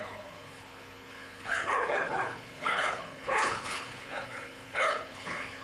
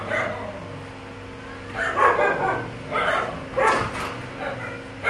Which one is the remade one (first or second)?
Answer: first